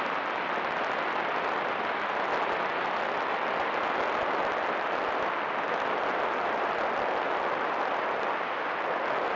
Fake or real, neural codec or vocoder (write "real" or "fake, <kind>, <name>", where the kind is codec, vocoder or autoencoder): real